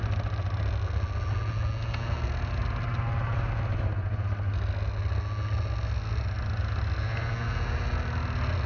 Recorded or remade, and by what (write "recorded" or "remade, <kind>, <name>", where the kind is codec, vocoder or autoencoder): recorded